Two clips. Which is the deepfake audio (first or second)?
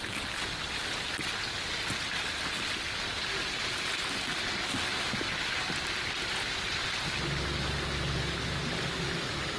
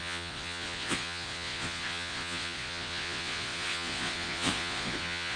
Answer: second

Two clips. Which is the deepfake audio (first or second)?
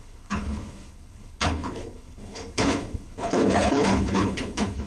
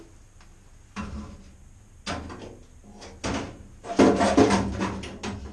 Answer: first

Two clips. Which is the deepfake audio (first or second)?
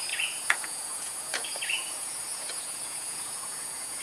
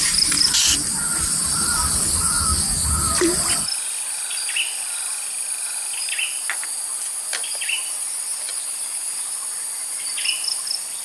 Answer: first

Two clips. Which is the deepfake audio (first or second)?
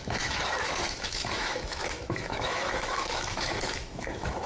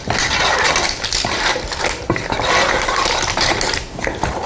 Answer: first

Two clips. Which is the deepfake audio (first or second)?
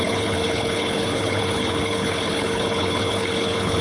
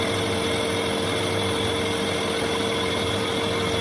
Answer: first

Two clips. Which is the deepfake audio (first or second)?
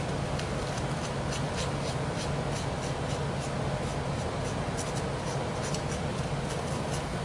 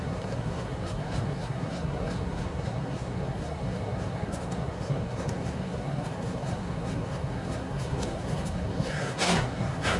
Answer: second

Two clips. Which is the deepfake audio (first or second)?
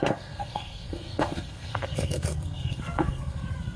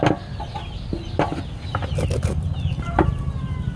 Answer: first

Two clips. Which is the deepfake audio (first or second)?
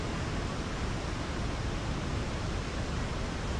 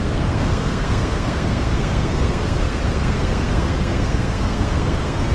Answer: second